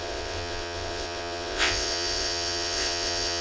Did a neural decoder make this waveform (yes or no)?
yes